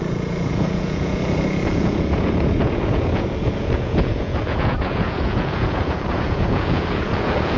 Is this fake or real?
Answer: fake